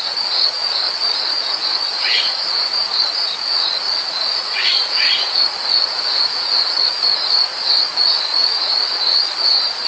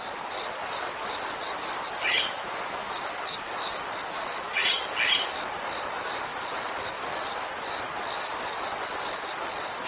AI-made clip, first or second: first